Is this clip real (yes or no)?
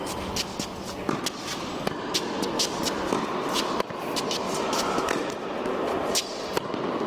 yes